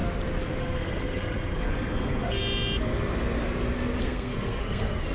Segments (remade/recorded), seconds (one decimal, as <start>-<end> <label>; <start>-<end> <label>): 0.0-0.6 recorded; 0.6-2.4 remade; 2.4-4.0 recorded; 4.0-5.1 remade